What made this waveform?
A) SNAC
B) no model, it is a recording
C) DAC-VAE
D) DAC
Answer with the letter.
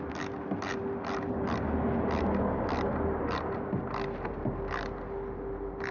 B